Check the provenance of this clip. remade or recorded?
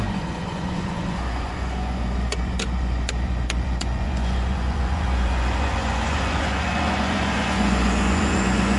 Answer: remade